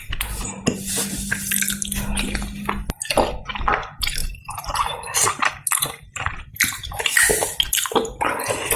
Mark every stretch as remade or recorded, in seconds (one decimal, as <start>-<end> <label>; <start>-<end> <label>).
0.0-4.2 recorded; 4.2-7.0 remade; 7.0-8.8 recorded

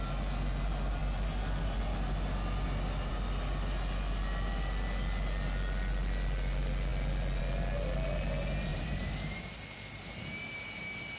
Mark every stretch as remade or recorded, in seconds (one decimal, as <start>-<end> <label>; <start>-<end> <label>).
0.0-8.7 recorded; 8.7-9.4 remade; 9.4-11.2 recorded

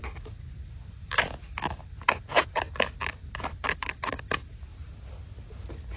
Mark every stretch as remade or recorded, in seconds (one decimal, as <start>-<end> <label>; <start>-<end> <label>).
0.0-1.0 recorded; 1.0-1.8 remade; 1.8-3.5 recorded; 3.5-4.7 remade; 4.7-6.0 recorded

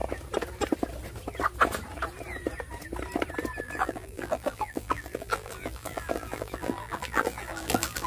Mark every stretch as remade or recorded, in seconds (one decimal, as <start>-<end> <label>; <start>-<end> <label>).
0.0-3.6 recorded; 3.6-8.1 remade

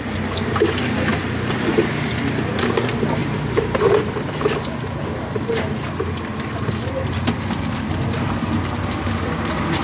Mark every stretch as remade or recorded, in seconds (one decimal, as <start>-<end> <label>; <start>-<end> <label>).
0.0-3.2 recorded; 3.2-3.8 remade; 3.8-9.8 recorded

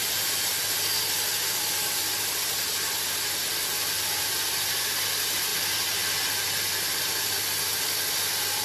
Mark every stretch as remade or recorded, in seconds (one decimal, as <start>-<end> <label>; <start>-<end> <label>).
0.0-2.0 remade; 2.0-3.5 recorded; 3.5-5.5 remade; 5.5-6.8 recorded; 6.8-8.6 remade

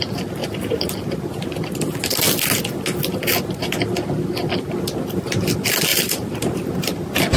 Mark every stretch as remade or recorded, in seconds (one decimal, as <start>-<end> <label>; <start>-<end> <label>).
0.0-5.9 recorded; 5.9-6.4 remade; 6.4-7.4 recorded

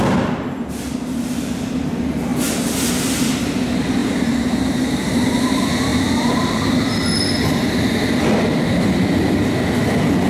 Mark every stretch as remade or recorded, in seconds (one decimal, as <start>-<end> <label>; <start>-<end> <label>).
0.0-4.0 recorded; 4.0-5.2 remade; 5.2-5.9 recorded; 5.9-6.6 remade; 6.6-10.3 recorded